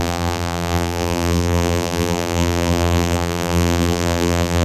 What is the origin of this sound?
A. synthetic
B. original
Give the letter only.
A